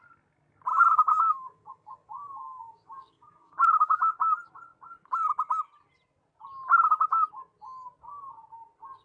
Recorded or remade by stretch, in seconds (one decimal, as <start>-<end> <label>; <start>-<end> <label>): 0.0-0.7 recorded; 0.7-4.1 remade; 4.1-9.0 recorded